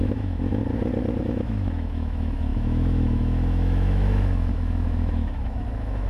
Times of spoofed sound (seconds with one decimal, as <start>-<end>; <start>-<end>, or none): 0.0-0.6; 1.2-6.1